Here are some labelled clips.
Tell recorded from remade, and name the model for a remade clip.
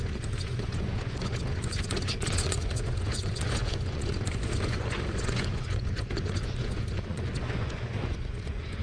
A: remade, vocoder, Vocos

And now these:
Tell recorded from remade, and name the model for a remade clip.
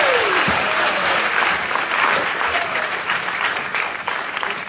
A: remade, vocoder, BigVGAN v2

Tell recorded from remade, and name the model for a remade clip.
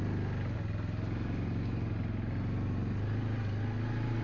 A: recorded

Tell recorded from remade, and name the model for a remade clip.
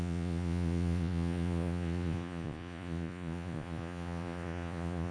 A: remade, vocoder, Vocos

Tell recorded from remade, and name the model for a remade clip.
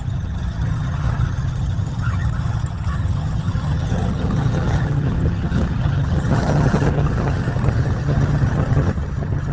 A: remade, vocoder, HiFi-GAN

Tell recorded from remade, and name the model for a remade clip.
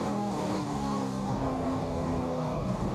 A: remade, codec, DAC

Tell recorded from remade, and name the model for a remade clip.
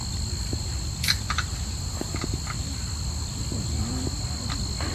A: recorded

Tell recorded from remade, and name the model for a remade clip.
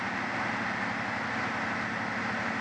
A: recorded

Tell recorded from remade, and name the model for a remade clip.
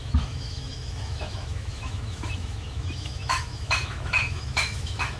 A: remade, autoencoder, DAC-VAE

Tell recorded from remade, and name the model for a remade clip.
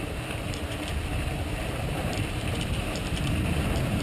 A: remade, vocoder, BigVGAN v2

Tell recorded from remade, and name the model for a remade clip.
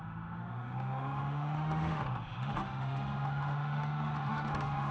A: remade, autoencoder, DAC-VAE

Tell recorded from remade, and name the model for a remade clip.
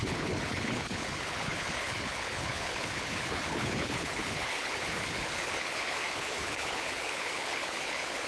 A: remade, codec, HILCodec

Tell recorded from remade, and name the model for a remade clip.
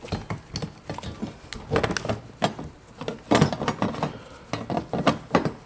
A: recorded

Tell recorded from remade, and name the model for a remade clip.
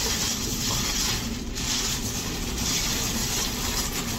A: recorded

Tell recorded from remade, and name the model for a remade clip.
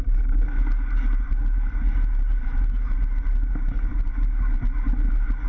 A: recorded